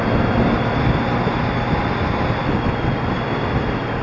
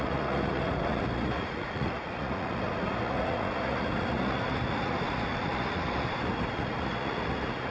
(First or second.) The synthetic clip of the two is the second